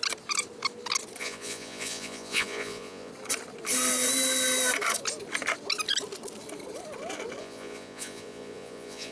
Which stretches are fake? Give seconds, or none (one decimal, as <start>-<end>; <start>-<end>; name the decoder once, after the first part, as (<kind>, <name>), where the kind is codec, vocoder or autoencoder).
1.2-3.1 (vocoder, Vocos); 7.4-9.1